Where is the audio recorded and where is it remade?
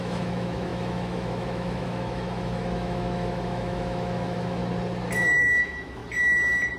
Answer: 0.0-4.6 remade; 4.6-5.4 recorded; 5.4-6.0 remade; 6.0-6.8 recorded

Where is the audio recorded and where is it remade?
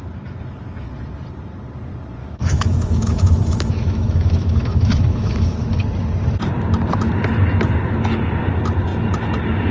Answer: 0.0-2.2 recorded; 2.2-5.8 remade; 5.8-9.7 recorded